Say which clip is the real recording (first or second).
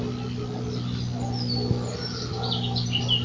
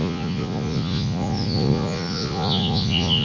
first